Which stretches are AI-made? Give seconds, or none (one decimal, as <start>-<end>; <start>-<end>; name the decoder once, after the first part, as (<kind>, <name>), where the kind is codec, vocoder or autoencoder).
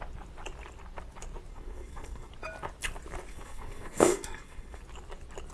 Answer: 1.5-2.3 (codec, SNAC); 3.3-4.8